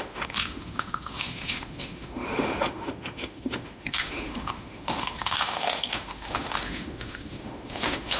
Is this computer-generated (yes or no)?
yes